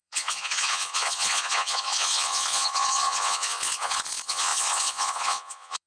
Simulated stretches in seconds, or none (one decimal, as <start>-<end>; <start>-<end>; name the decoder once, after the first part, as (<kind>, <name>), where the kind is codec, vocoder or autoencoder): 0.0-5.9 (vocoder, Vocos)